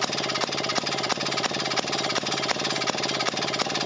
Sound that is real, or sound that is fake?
real